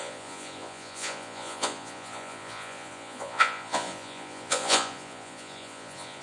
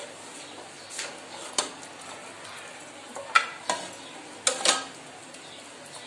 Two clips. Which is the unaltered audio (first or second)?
second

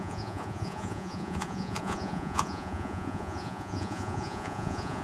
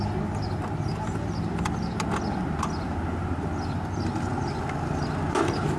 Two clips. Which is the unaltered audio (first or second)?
second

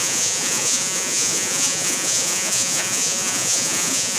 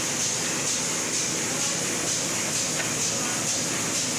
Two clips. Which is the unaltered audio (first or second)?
second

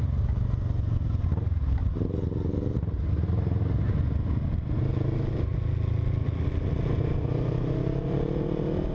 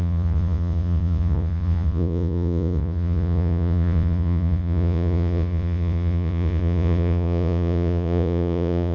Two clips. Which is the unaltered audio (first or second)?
first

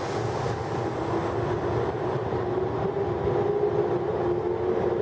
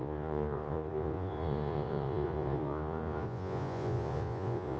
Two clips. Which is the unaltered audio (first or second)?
first